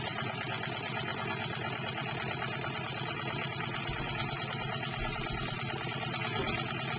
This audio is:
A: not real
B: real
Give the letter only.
B